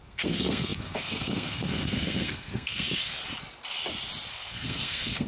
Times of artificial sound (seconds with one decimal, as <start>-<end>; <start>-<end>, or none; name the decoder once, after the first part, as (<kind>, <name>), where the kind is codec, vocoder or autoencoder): 0.0-3.2 (codec, SNAC); 4.3-5.3